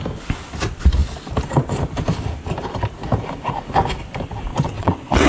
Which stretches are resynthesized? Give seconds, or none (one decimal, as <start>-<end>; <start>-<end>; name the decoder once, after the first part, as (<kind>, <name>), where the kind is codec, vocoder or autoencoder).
4.5-5.3 (vocoder, WaveNeXt)